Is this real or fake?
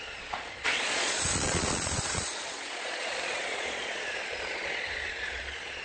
fake